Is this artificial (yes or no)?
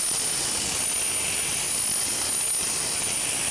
no